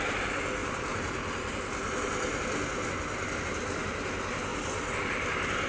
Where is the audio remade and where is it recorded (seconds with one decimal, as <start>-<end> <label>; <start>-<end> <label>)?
0.0-5.7 recorded